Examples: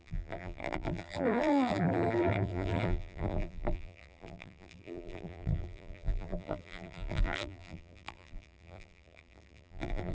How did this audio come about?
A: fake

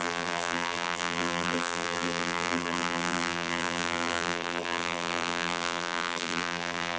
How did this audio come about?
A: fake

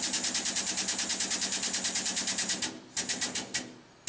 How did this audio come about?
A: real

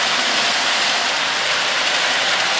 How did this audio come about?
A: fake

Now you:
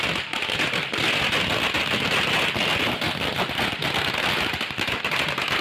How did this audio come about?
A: real